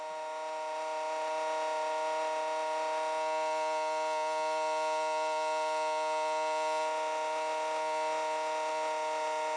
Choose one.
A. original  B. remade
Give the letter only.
A